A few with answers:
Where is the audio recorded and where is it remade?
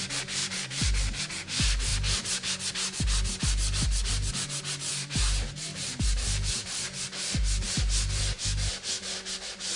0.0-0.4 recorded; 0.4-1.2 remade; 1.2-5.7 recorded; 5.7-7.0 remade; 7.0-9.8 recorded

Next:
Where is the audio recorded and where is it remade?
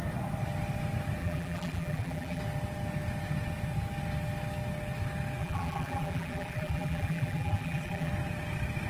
0.0-1.2 recorded; 1.2-2.4 remade; 2.4-5.4 recorded; 5.4-8.1 remade; 8.1-8.9 recorded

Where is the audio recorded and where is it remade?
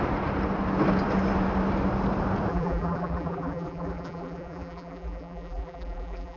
0.0-2.5 recorded; 2.5-6.4 remade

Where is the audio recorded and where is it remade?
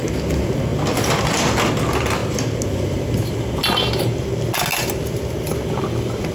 0.0-6.3 recorded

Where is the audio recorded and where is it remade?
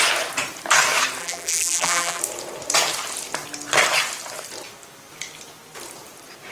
0.0-1.2 recorded; 1.2-2.2 remade; 2.2-6.5 recorded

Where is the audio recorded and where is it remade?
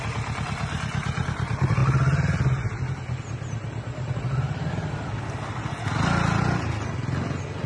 0.0-7.7 recorded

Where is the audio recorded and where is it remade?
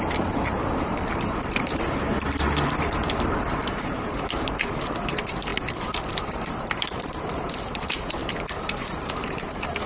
0.0-9.9 remade